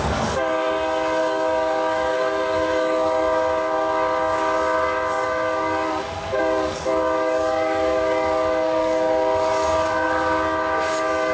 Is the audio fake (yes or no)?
yes